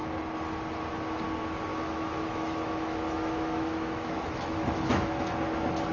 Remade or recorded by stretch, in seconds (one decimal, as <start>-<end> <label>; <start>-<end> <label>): 0.0-1.7 recorded; 1.7-5.2 remade; 5.2-5.9 recorded